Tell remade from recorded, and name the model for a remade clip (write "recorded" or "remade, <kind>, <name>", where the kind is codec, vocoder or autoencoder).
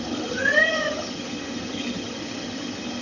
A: remade, vocoder, HiFi-GAN